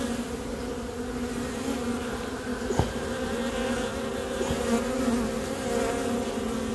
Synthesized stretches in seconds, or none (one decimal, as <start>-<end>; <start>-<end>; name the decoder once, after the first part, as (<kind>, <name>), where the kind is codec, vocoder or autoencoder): none